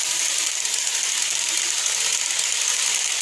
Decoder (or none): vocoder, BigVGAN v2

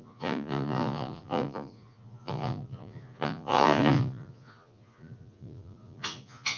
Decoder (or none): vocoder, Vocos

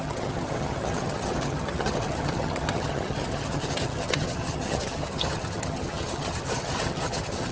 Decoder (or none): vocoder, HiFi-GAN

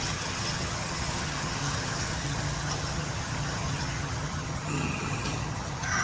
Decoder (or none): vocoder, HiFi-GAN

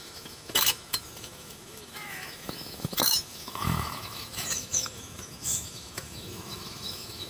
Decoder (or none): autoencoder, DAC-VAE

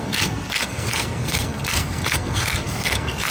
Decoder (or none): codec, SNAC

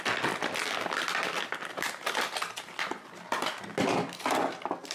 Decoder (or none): none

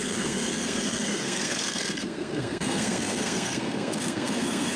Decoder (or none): codec, SNAC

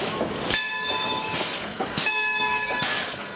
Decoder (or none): codec, DAC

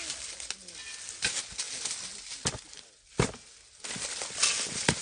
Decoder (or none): none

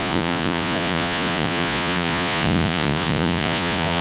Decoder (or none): vocoder, Vocos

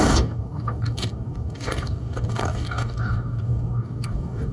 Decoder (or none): codec, DAC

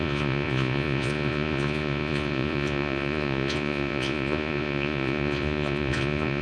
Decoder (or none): vocoder, Vocos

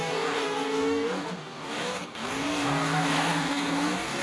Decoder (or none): codec, DAC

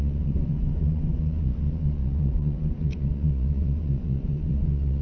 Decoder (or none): vocoder, Vocos